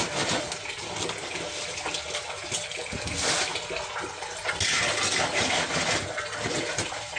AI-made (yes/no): no